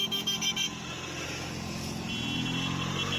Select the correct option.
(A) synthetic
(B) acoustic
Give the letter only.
B